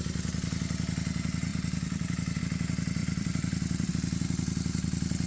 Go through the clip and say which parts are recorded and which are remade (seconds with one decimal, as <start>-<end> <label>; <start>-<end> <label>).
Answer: 0.0-1.5 recorded; 1.5-2.4 remade; 2.4-3.0 recorded; 3.0-3.9 remade; 3.9-5.3 recorded